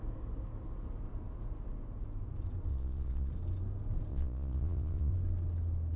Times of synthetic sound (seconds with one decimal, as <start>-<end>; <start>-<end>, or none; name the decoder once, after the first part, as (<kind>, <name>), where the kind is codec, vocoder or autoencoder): 2.7-3.3 (vocoder, Vocos); 4.1-5.1